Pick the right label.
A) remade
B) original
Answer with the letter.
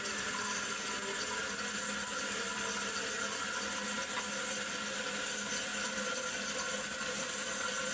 B